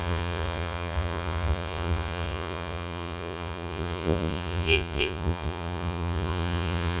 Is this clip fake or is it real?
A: fake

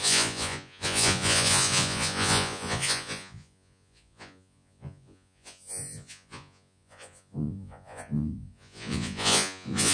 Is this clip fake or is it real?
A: fake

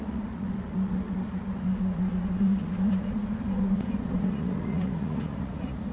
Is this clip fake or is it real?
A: fake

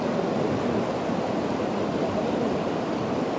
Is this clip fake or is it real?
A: real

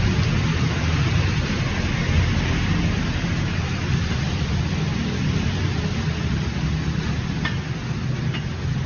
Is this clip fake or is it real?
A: real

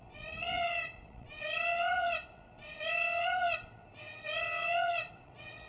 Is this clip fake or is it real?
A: fake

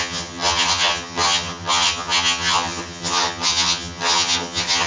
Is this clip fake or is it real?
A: fake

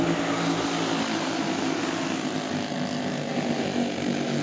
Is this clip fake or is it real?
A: real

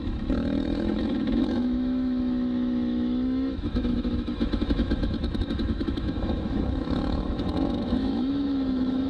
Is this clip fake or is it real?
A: fake